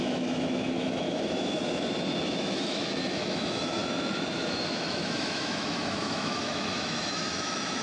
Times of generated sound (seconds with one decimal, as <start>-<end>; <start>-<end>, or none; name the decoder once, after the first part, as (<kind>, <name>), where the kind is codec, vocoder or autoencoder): 0.0-1.6 (autoencoder, DAC-VAE); 2.2-7.8